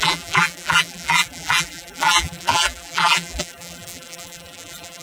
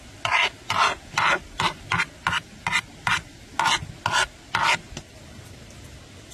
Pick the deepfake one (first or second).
first